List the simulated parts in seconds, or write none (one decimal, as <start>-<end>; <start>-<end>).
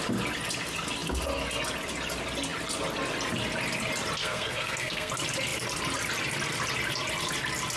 4.2-5.1